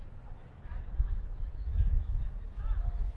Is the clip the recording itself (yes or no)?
no